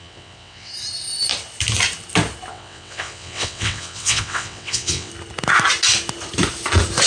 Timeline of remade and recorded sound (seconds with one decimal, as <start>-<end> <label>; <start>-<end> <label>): 0.0-0.7 remade; 0.7-2.5 recorded; 2.5-5.1 remade; 5.1-7.1 recorded